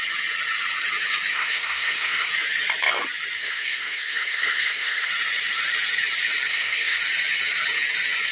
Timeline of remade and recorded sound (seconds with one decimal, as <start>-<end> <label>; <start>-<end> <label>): 0.0-1.3 recorded; 1.3-2.3 remade; 2.3-3.4 recorded; 3.4-5.1 remade; 5.1-6.5 recorded; 6.5-7.0 remade; 7.0-8.3 recorded

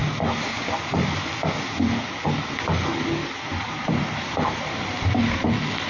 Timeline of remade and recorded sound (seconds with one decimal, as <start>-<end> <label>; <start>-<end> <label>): 0.0-3.2 recorded; 3.2-5.4 remade; 5.4-5.9 recorded

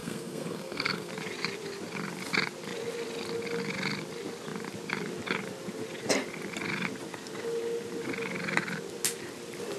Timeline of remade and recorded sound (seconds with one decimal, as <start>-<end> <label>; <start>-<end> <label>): 0.0-1.1 remade; 1.1-9.8 recorded

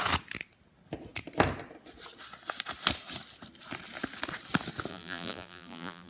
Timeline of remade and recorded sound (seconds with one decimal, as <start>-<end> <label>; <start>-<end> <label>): 0.0-4.9 recorded; 4.9-6.1 remade

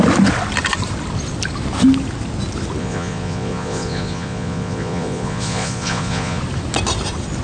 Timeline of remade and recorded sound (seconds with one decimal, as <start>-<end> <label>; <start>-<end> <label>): 0.0-2.8 recorded; 2.8-6.4 remade; 6.4-7.4 recorded

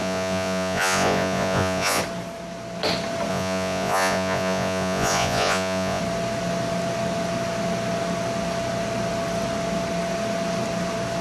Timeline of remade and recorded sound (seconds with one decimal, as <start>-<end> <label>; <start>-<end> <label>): 0.0-2.0 remade; 2.0-3.3 recorded; 3.3-6.0 remade; 6.0-11.2 recorded